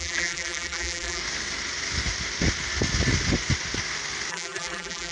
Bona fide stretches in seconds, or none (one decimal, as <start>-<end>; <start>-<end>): 1.2-4.3